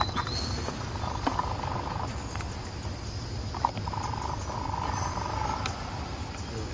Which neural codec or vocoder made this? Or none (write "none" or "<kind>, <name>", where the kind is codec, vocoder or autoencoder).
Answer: none